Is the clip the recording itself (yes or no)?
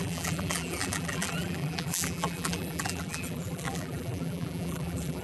no